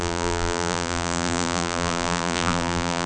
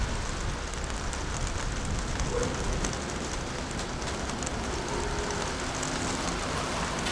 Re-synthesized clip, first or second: first